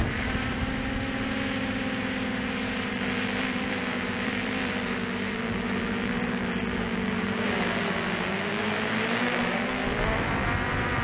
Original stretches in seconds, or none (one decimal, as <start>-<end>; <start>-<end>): 0.0-2.9